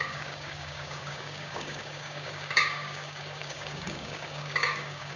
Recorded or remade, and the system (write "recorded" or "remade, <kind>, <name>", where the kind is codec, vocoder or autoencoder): remade, codec, DAC